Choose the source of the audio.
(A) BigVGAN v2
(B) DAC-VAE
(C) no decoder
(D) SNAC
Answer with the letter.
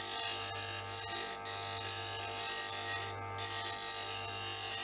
C